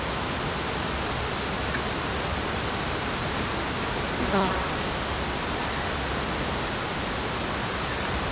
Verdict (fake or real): real